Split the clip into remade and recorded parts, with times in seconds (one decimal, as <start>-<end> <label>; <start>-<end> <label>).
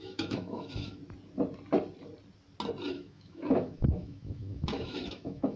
0.0-1.0 remade; 1.0-2.9 recorded; 2.9-5.6 remade